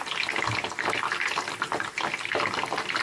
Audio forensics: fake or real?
real